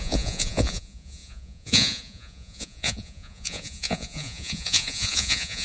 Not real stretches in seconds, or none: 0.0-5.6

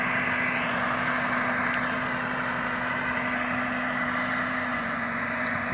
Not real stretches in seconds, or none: 4.7-5.7

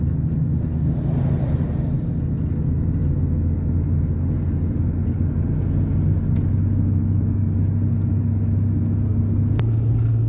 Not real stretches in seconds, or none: none

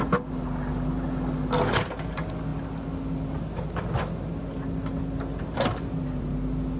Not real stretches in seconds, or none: none

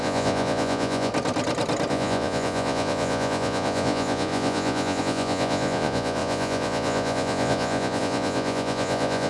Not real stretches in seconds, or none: 0.0-1.1; 1.9-9.3